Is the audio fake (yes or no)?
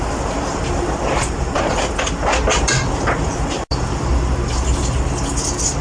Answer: no